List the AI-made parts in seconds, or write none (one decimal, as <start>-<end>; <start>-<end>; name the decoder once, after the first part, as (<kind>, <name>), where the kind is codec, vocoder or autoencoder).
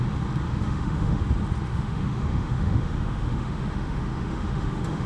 0.5-1.2 (autoencoder, DAC-VAE); 1.7-5.1